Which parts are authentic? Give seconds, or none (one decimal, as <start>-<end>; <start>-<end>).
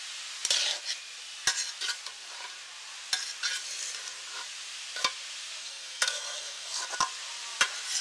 0.0-5.6; 6.8-8.0